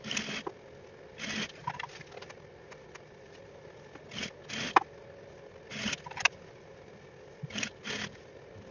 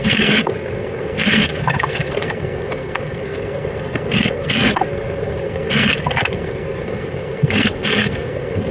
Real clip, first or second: first